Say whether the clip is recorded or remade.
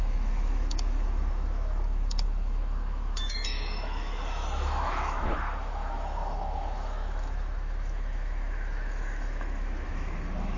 remade